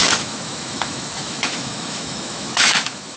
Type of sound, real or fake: fake